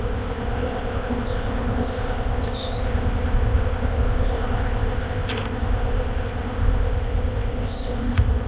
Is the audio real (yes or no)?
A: no